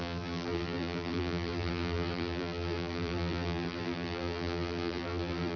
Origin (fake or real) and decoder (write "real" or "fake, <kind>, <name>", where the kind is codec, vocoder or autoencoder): fake, vocoder, BigVGAN v2